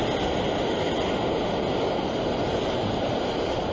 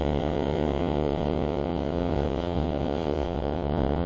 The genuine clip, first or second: first